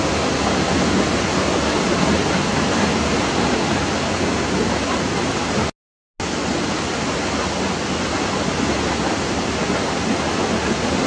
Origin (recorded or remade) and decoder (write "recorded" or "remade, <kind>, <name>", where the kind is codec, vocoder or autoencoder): recorded